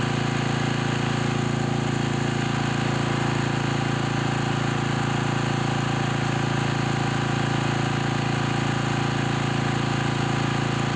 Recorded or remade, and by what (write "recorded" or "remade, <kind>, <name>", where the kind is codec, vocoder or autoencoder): recorded